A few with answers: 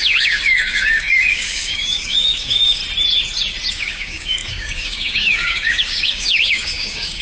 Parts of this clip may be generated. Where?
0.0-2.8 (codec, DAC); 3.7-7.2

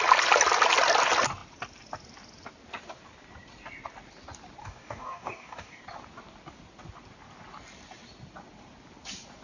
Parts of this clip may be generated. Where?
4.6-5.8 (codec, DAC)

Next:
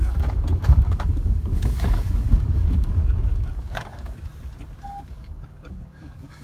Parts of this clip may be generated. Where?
0.0-4.3 (codec, DAC); 4.9-6.4